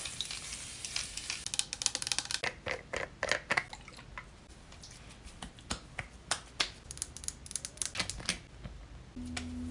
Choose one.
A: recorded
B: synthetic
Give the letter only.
A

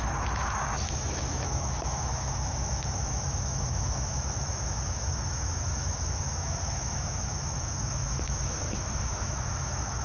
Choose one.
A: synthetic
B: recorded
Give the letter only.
A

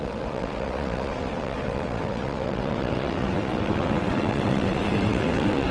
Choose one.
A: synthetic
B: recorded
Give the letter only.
A